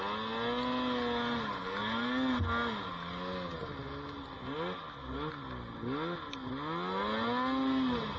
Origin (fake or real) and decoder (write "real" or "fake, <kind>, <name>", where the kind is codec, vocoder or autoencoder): real